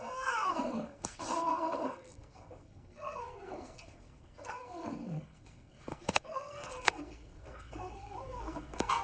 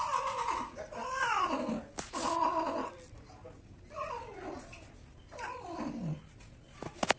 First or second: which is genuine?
second